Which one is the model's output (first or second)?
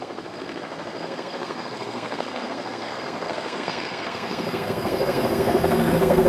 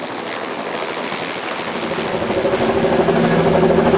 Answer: first